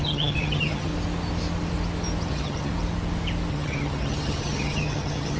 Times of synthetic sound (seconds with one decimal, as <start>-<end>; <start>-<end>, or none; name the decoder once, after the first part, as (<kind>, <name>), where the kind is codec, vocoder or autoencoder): 0.0-0.9 (vocoder, HiFi-GAN); 2.3-2.7; 3.5-5.4